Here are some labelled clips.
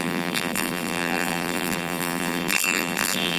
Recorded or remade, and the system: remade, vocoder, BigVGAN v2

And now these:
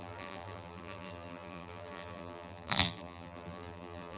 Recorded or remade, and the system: remade, vocoder, BigVGAN v2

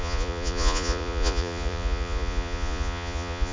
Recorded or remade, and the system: remade, vocoder, Vocos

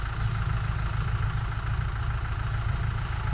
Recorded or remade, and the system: recorded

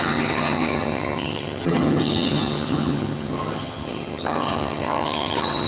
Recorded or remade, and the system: remade, vocoder, HiFi-GAN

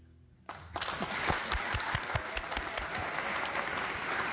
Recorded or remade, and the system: recorded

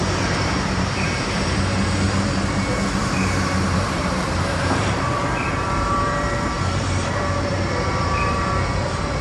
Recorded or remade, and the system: remade, vocoder, BigVGAN v2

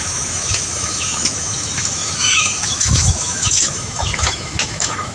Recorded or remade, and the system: remade, autoencoder, DAC-VAE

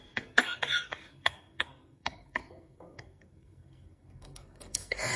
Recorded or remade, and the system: remade, codec, SNAC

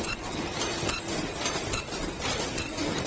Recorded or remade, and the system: recorded